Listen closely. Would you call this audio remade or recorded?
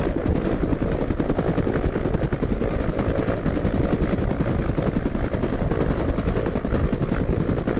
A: recorded